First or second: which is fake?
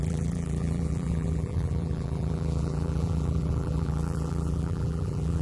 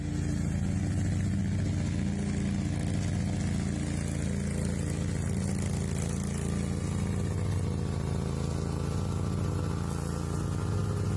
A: first